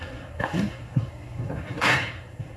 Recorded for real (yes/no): no